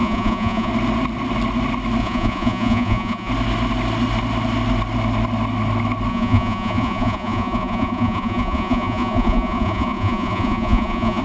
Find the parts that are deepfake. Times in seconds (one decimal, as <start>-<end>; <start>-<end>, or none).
0.0-0.7; 2.0-3.3; 6.1-11.2

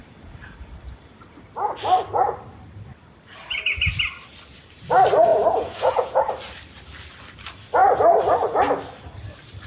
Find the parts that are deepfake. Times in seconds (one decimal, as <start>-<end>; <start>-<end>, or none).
5.3-6.3